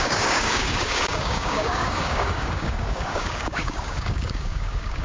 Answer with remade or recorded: remade